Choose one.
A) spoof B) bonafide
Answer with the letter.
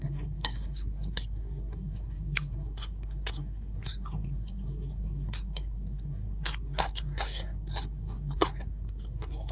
A